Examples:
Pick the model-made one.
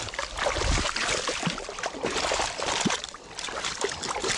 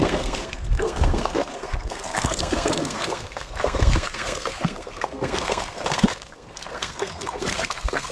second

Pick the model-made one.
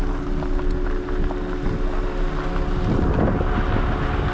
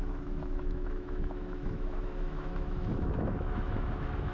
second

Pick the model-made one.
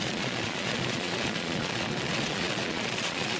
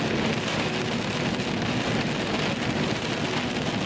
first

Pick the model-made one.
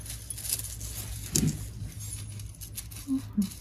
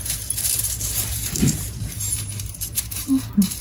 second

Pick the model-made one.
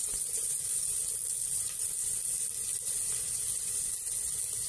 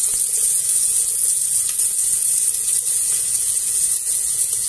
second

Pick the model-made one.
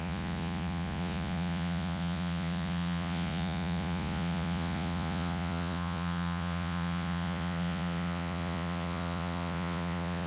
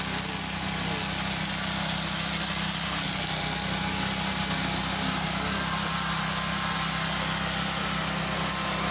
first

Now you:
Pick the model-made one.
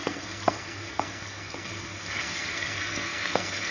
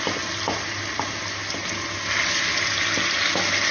first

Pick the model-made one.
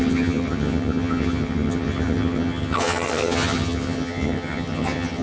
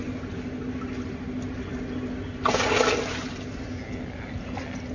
first